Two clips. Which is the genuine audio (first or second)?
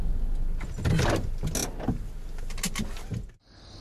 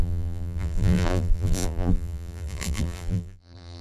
first